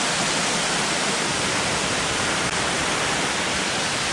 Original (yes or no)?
yes